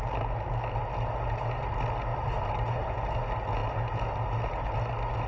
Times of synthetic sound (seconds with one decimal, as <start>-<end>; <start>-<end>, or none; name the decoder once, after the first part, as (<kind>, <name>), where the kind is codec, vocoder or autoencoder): 2.1-2.9 (vocoder, BigVGAN v2)